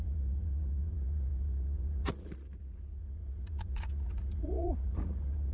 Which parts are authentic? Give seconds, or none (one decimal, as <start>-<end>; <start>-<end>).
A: none